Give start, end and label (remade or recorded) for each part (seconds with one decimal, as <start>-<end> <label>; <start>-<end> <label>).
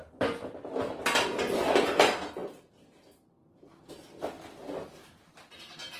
0.0-2.4 recorded; 2.4-3.9 remade; 3.9-5.0 recorded; 5.0-6.0 remade